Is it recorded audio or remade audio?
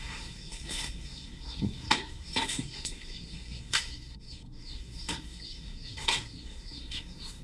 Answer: remade